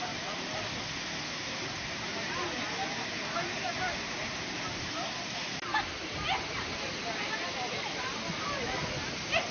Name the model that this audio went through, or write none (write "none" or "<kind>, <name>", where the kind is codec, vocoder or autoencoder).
none